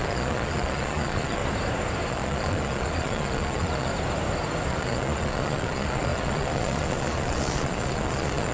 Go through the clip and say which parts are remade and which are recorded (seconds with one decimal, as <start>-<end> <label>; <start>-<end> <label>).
0.0-1.4 remade; 1.4-2.1 recorded; 2.1-3.9 remade; 3.9-4.7 recorded; 4.7-8.5 remade